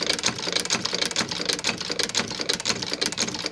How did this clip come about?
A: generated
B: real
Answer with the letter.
B